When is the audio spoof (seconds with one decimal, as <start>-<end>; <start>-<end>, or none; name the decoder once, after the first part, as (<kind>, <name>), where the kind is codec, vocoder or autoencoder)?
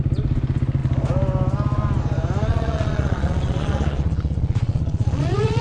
2.5-5.6 (vocoder, Vocos)